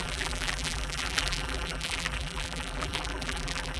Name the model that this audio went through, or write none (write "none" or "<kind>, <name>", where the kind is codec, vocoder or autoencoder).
vocoder, BigVGAN v2